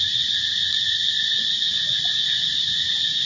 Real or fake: real